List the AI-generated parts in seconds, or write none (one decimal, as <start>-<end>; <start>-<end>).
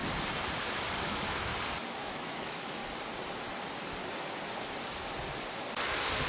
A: 1.0-1.5; 2.0-2.8